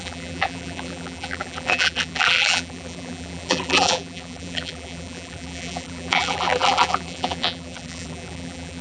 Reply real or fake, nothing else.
fake